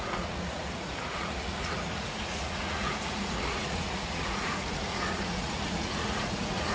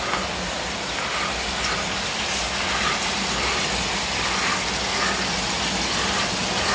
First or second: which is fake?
first